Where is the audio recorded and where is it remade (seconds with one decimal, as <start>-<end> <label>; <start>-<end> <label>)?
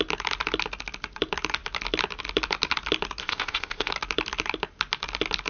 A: 0.0-3.2 recorded; 3.2-3.9 remade; 3.9-5.5 recorded